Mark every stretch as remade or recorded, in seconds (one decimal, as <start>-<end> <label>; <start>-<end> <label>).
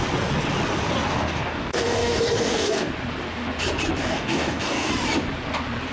0.0-1.1 recorded; 1.1-2.9 remade; 2.9-4.0 recorded; 4.0-4.9 remade; 4.9-5.9 recorded